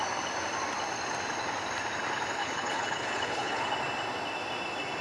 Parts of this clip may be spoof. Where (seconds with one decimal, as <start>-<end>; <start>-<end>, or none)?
2.4-3.7